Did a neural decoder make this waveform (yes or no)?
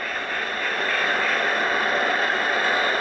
no